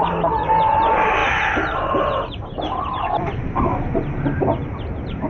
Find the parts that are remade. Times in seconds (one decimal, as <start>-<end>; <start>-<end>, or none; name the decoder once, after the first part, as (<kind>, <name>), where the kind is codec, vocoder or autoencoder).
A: 0.0-5.3 (vocoder, BigVGAN v2)